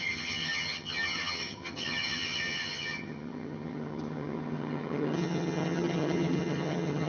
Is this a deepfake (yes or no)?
yes